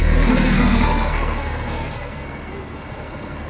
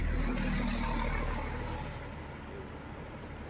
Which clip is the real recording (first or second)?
second